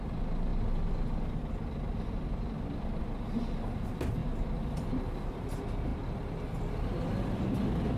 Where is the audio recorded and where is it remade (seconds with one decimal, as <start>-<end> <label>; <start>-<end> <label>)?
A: 0.0-5.9 recorded; 5.9-6.6 remade; 6.6-8.0 recorded